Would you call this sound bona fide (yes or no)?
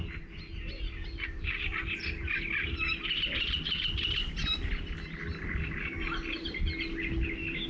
yes